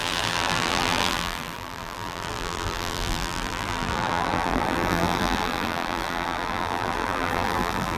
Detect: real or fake fake